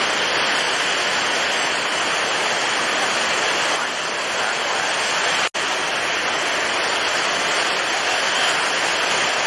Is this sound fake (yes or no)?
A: no